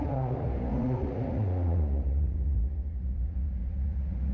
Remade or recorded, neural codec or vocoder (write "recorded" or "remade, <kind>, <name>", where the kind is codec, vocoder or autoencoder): remade, vocoder, Vocos